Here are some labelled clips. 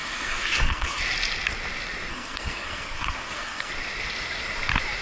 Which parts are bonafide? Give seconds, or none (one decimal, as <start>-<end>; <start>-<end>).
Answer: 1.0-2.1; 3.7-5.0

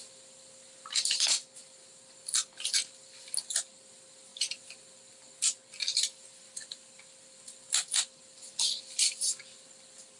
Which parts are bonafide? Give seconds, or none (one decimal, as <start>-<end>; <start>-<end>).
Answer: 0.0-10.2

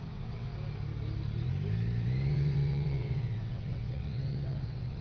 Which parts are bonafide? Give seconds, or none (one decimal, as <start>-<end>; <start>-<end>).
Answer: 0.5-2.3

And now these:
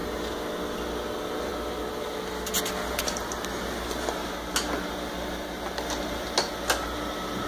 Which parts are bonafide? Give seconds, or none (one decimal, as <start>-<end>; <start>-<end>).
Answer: 0.5-7.5

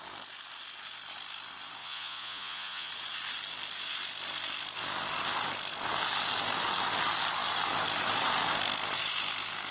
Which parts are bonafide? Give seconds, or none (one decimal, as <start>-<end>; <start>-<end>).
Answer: 0.0-1.8; 2.9-9.7

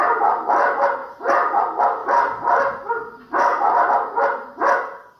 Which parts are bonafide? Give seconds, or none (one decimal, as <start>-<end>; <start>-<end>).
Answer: 0.0-5.2

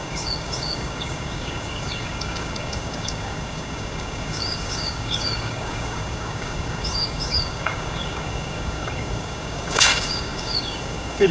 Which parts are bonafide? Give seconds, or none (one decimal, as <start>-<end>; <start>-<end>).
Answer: none

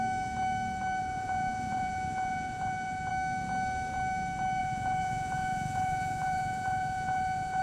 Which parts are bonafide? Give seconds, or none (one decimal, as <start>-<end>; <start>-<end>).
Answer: 0.0-1.0; 3.1-4.6